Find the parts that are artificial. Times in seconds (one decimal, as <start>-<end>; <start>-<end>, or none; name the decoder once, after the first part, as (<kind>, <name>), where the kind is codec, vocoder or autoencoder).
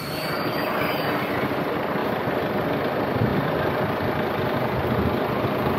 none